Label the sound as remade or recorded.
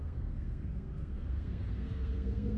remade